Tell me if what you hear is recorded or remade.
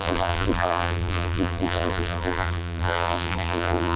remade